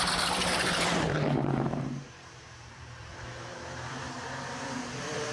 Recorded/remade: remade